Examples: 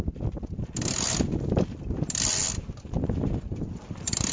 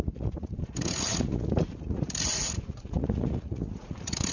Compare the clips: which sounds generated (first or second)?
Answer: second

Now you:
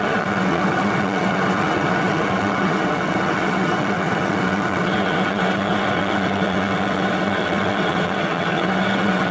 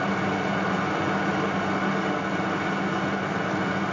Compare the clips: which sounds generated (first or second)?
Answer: first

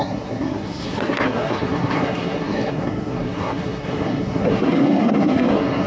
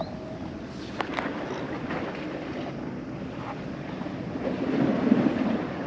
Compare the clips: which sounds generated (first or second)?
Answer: first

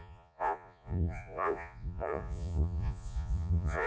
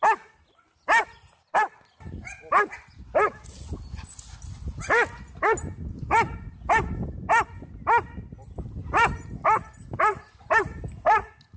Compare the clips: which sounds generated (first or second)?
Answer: first